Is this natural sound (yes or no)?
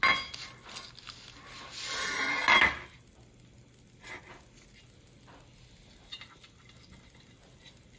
yes